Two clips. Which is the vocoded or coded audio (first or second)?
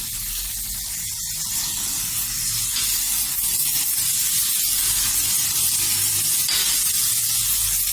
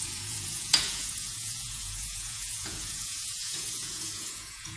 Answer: second